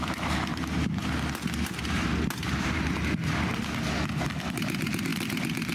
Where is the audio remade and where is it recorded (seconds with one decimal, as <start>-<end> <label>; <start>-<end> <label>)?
0.0-1.0 remade; 1.0-4.4 recorded; 4.4-5.7 remade